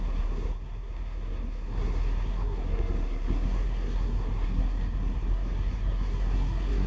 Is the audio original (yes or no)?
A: no